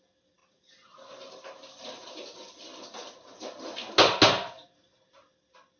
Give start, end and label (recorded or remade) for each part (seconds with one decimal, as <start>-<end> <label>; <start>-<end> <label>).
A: 0.0-5.8 recorded